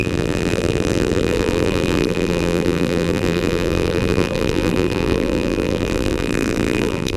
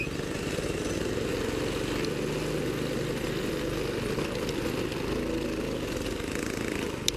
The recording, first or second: second